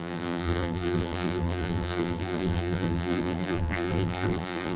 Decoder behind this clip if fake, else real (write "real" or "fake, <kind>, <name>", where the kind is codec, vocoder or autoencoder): fake, vocoder, BigVGAN v2